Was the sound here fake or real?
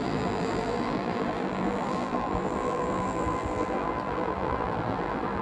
fake